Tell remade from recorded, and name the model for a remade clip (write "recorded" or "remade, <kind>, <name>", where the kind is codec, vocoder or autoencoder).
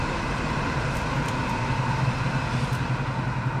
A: recorded